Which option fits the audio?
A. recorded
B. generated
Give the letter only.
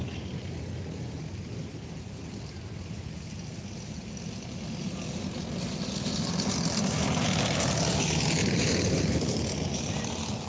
A